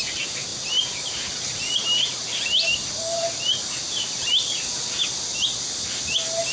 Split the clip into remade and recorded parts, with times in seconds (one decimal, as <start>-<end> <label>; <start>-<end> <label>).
0.0-5.3 recorded; 5.3-6.1 remade; 6.1-6.5 recorded